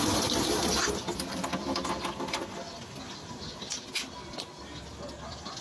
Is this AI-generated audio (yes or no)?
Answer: no